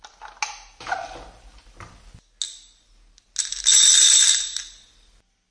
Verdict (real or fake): real